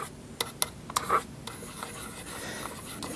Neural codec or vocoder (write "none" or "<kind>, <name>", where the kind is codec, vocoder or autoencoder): none